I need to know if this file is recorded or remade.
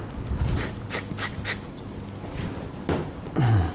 recorded